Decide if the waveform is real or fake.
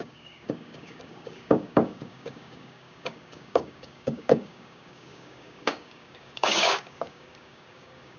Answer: fake